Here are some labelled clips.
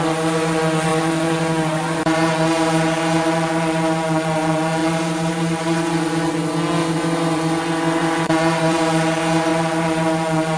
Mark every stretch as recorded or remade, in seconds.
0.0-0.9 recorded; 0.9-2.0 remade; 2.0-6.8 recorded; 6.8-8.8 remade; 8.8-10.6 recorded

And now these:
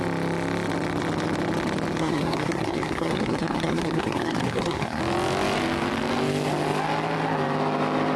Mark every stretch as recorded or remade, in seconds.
0.0-2.0 recorded; 2.0-5.0 remade; 5.0-8.2 recorded

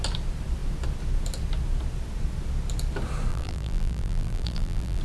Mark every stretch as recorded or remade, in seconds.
0.0-3.3 recorded; 3.3-5.0 remade

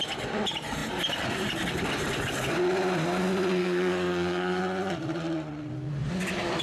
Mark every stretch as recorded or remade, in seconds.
0.0-3.6 recorded; 3.6-4.6 remade; 4.6-6.6 recorded

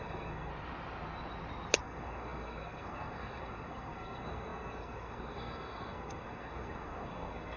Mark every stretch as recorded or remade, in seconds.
0.0-0.5 remade; 0.5-1.8 recorded; 1.8-7.6 remade

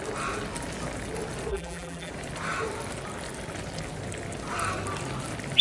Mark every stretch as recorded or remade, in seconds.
0.0-1.5 recorded; 1.5-2.1 remade; 2.1-5.6 recorded